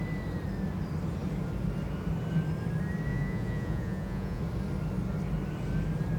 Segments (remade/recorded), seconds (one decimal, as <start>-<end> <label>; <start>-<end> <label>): 0.0-3.1 recorded; 3.1-4.4 remade; 4.4-6.2 recorded